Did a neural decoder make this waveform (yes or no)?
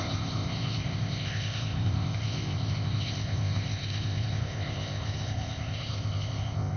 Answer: yes